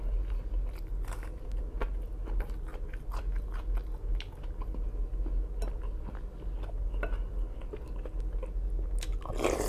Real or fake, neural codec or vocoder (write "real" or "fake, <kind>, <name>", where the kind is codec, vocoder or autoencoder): real